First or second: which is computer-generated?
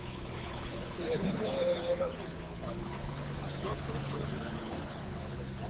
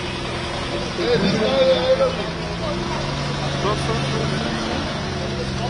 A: first